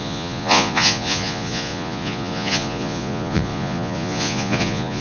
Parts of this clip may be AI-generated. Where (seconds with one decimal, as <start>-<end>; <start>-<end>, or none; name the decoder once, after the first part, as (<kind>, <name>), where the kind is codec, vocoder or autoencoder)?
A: 0.0-5.0 (vocoder, Vocos)